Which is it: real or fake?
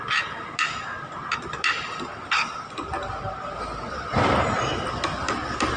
real